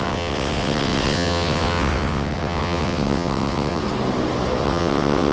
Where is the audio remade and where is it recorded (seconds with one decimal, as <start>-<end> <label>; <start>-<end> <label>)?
0.0-3.8 remade; 3.8-4.6 recorded; 4.6-5.3 remade